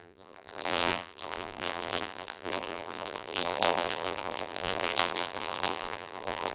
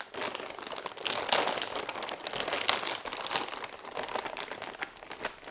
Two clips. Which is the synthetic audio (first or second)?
first